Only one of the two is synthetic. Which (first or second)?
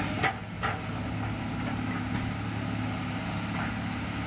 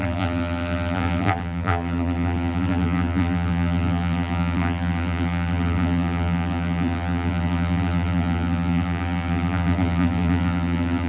second